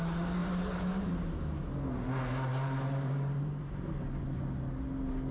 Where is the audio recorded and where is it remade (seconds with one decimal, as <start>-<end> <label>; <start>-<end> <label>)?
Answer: 0.0-0.4 recorded; 0.4-1.1 remade; 1.1-2.5 recorded; 2.5-3.9 remade; 3.9-5.3 recorded